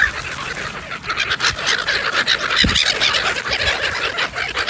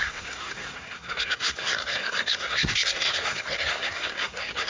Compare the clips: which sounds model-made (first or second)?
second